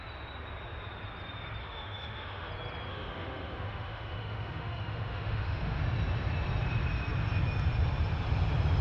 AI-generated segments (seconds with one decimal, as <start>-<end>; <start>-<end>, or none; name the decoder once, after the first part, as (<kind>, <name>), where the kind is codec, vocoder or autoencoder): 1.6-2.5 (autoencoder, DAC-VAE); 2.9-5.8